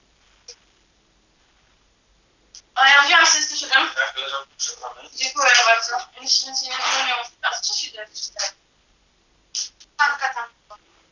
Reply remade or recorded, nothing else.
recorded